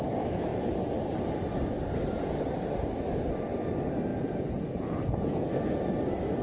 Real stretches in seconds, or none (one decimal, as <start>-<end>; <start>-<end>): 0.0-4.1; 5.5-6.4